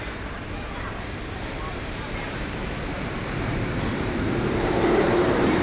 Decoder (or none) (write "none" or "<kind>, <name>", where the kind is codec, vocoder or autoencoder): vocoder, BigVGAN v2